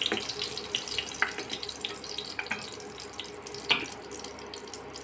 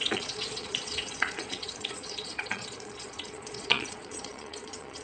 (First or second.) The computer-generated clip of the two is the second